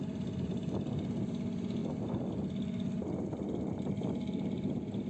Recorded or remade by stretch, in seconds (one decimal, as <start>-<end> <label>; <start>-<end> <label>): 0.0-5.1 recorded